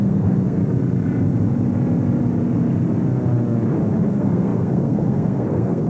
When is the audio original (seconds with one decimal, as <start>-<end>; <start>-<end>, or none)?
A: 0.6-4.1